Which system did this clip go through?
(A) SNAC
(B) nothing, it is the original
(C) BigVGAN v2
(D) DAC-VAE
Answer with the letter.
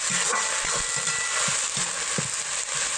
B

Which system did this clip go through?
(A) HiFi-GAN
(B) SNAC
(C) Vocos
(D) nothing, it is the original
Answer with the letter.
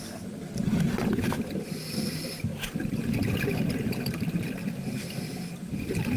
D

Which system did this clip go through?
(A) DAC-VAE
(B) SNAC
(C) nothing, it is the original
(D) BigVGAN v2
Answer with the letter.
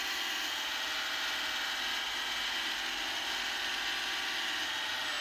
C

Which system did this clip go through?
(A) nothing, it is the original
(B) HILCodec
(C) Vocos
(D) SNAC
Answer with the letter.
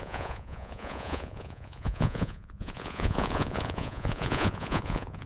C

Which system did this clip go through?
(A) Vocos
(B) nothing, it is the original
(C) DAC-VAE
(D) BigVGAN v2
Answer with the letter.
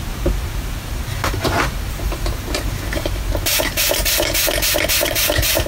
D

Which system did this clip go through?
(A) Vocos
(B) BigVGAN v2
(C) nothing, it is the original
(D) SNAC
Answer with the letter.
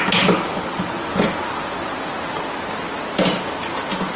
C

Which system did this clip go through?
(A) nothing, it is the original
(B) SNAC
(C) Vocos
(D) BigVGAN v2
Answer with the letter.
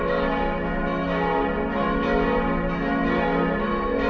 A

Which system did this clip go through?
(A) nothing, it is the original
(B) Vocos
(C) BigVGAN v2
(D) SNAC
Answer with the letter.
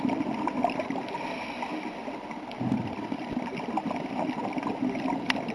A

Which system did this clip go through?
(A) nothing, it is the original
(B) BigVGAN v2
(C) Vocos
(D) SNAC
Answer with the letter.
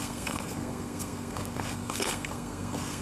D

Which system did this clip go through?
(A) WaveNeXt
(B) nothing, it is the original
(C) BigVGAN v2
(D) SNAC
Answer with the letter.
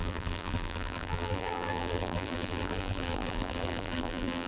C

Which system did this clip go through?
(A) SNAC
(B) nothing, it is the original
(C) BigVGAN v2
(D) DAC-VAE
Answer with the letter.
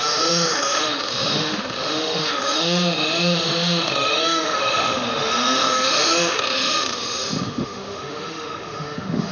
D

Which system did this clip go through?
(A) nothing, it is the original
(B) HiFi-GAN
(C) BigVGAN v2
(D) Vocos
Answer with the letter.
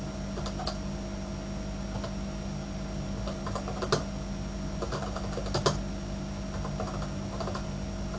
A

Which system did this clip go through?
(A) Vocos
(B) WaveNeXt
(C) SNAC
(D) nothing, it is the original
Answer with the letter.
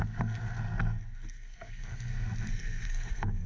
C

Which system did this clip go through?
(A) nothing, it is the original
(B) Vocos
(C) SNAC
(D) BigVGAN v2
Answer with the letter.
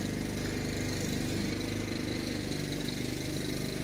A